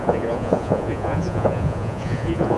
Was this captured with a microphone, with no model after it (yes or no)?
no